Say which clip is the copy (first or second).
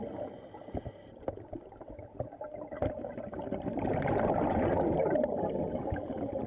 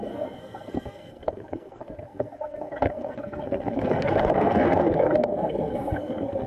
second